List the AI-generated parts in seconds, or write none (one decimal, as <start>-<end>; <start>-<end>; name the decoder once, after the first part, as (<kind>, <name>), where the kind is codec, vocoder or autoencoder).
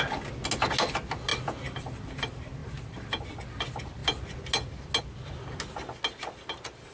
none